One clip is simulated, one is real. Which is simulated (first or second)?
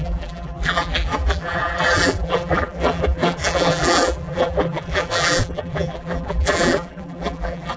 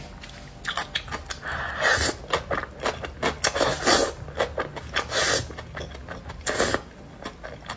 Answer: first